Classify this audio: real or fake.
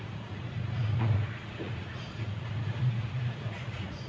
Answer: fake